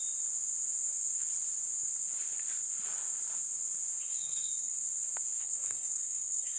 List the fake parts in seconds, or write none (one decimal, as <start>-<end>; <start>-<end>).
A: 4.0-4.8; 5.4-6.6